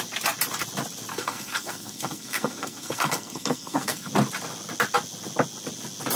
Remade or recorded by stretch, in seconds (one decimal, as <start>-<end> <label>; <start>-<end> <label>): 0.0-1.1 recorded; 1.1-4.1 remade; 4.1-6.2 recorded